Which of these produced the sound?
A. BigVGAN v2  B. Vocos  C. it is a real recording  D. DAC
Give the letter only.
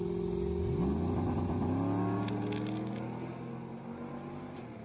C